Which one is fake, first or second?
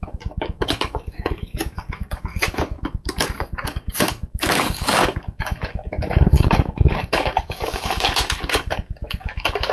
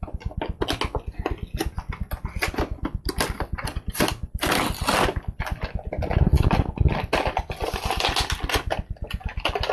first